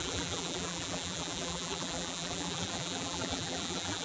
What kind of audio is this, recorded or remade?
remade